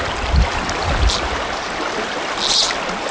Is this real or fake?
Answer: real